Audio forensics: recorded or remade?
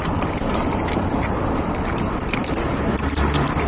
remade